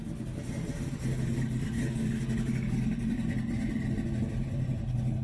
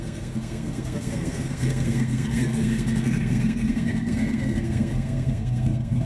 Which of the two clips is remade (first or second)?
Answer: second